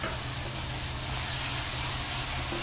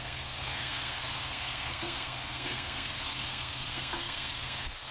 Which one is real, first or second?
first